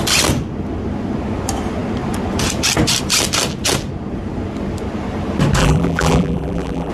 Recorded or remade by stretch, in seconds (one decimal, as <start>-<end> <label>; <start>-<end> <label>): 0.0-5.6 recorded; 5.6-6.9 remade